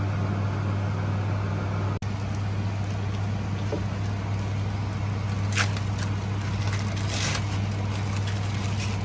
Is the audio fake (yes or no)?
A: no